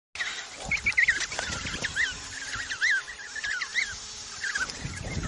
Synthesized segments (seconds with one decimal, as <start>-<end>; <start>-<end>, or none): 2.2-5.3